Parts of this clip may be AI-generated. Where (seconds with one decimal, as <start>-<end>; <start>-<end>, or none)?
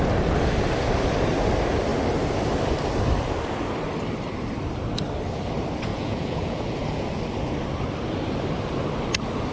5.9-7.2